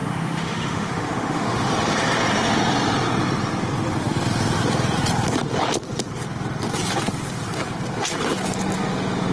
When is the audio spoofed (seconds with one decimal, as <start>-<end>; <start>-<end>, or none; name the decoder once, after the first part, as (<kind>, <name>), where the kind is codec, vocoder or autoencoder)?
0.0-1.7 (autoencoder, DAC-VAE)